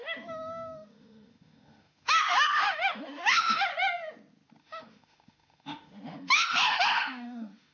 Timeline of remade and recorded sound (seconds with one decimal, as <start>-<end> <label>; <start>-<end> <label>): 0.0-3.7 remade; 3.7-4.6 recorded; 4.6-7.7 remade